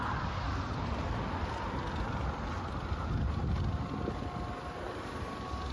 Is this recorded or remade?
recorded